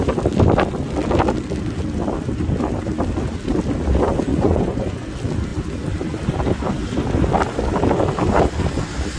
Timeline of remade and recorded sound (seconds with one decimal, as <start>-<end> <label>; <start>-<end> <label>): 0.0-4.3 recorded; 4.3-5.1 remade; 5.1-9.2 recorded